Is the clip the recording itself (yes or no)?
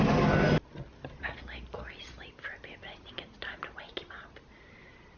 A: yes